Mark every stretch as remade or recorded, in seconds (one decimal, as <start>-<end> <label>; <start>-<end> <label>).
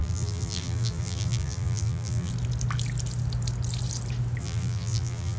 0.0-2.3 remade; 2.3-4.4 recorded; 4.4-5.4 remade